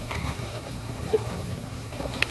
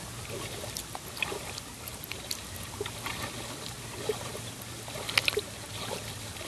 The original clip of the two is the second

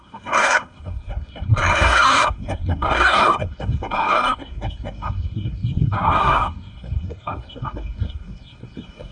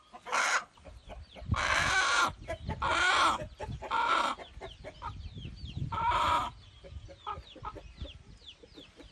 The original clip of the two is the second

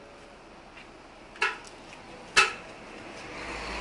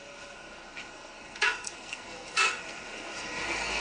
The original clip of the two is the first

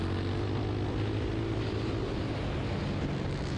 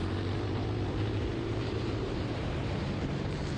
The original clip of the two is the first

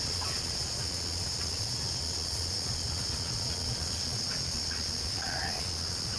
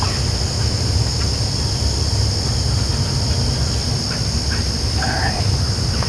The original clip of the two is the second